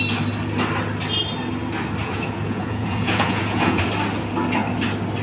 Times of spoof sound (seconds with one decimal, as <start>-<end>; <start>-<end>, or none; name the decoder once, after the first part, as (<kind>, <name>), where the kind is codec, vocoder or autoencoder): 2.0-3.8 (vocoder, Vocos)